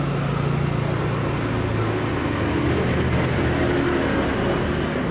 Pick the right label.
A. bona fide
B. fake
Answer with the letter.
A